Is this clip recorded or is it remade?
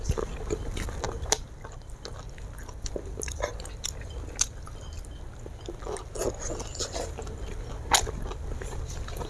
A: recorded